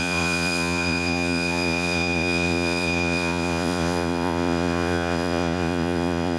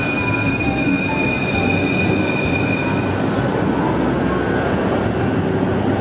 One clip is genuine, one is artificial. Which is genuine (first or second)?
second